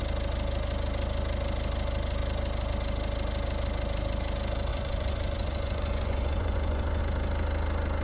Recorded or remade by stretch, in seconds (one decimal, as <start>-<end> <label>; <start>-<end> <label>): 0.0-4.7 recorded; 4.7-7.0 remade; 7.0-8.0 recorded